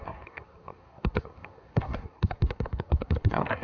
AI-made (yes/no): yes